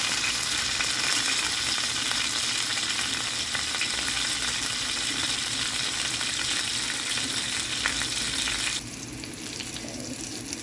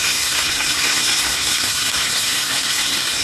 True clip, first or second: first